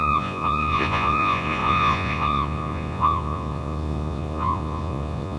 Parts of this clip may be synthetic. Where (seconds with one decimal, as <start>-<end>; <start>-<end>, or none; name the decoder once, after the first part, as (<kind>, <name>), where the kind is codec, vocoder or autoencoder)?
0.0-5.4 (vocoder, Vocos)